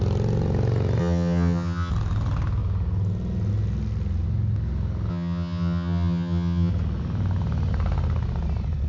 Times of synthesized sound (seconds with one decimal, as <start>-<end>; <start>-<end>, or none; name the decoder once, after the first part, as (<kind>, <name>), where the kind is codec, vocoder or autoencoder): 1.0-1.9 (vocoder, HiFi-GAN); 5.1-6.7